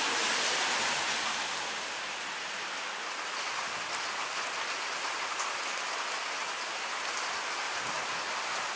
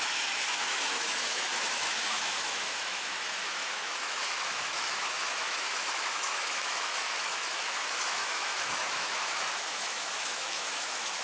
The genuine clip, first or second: first